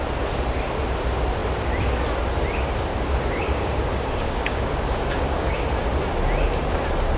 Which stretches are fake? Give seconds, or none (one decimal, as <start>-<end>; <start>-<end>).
2.9-5.5